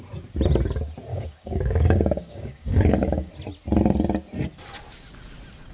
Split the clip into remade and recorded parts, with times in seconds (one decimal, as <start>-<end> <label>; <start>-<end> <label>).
0.0-1.1 recorded; 1.1-3.3 remade; 3.3-5.7 recorded